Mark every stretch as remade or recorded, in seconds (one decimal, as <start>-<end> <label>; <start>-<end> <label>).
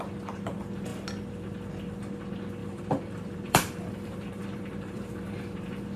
0.0-2.6 recorded; 2.6-5.1 remade; 5.1-6.0 recorded